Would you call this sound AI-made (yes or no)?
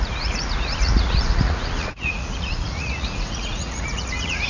yes